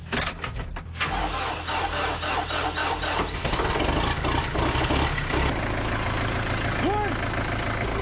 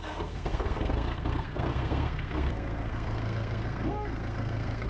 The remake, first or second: second